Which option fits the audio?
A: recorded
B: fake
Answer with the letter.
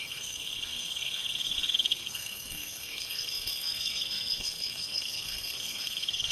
B